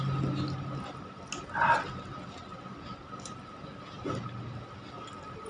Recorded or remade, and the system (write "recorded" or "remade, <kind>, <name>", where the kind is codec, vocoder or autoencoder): recorded